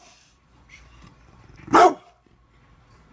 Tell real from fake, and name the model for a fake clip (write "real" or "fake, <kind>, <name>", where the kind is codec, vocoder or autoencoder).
fake, vocoder, BigVGAN v2